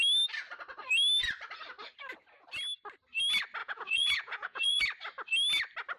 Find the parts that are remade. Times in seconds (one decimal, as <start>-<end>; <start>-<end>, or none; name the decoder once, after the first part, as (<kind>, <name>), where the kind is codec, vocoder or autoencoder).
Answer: 3.6-4.8 (vocoder, Vocos)